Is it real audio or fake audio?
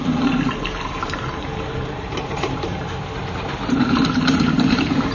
fake